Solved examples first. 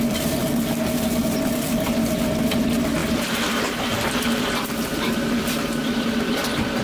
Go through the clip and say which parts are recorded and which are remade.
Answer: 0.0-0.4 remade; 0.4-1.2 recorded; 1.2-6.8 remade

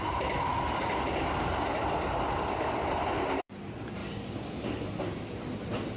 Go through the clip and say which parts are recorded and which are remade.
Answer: 0.0-0.5 remade; 0.5-3.4 recorded; 3.4-4.0 remade; 4.0-4.5 recorded; 4.5-6.0 remade

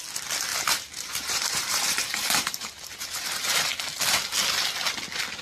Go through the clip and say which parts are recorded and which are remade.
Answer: 0.0-0.5 recorded; 0.5-3.7 remade; 3.7-5.4 recorded

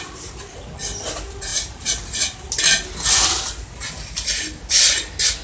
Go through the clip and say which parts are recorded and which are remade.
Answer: 0.0-5.4 recorded

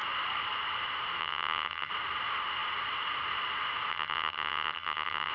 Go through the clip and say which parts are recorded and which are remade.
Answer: 0.0-1.2 recorded; 1.2-1.9 remade; 1.9-3.9 recorded; 3.9-5.3 remade